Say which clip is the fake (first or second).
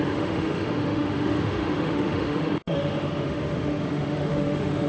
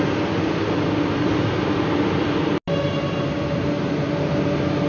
first